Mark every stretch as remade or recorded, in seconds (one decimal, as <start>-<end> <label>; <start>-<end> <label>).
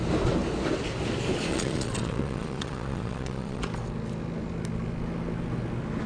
0.0-1.5 recorded; 1.5-3.6 remade; 3.6-6.1 recorded